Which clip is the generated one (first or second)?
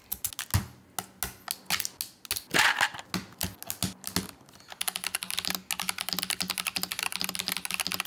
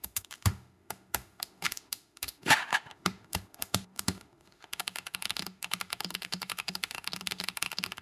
second